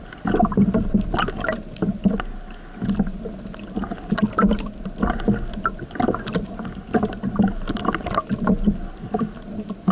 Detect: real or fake real